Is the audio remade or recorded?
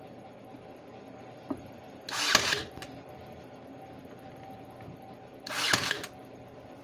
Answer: recorded